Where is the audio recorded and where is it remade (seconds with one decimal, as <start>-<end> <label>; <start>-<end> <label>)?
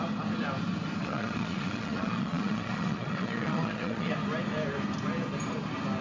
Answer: 0.0-1.0 recorded; 1.0-4.1 remade; 4.1-6.0 recorded